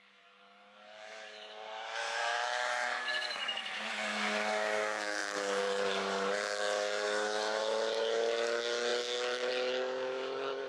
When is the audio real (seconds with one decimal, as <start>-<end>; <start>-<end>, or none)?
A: none